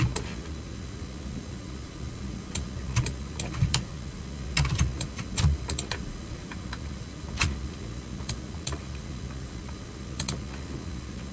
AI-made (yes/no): yes